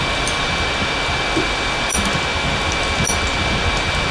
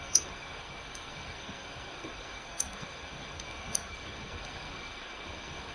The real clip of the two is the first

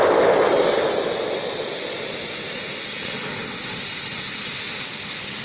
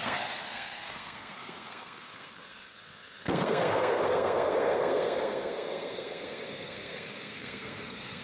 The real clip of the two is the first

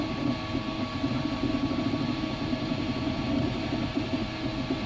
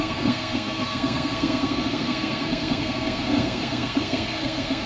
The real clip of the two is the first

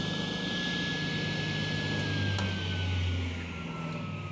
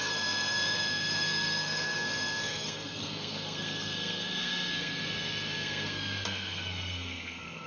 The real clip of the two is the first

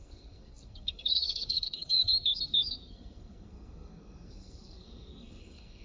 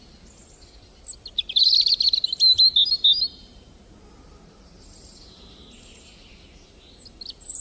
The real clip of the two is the second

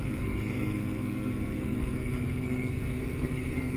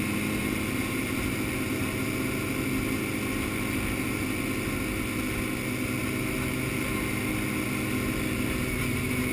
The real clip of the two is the second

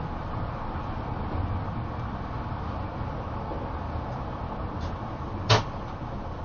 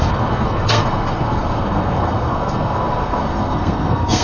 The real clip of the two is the first